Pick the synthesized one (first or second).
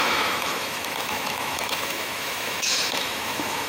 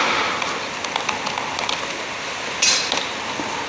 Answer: first